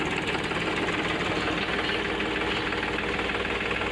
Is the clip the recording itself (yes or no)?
yes